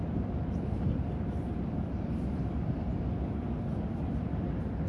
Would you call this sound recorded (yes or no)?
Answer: yes